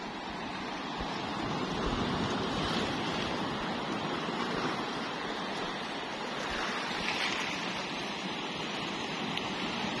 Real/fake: fake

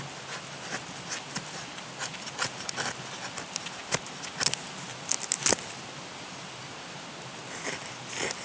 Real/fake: real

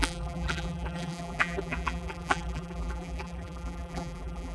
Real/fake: fake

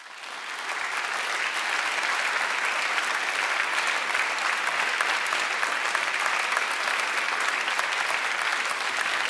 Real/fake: real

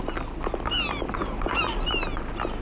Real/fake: real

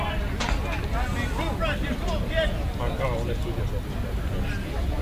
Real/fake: real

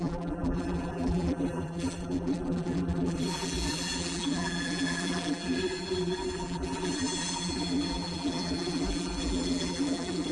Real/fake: fake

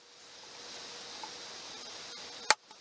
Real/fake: real